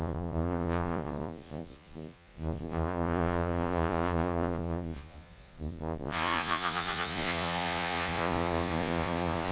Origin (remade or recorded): remade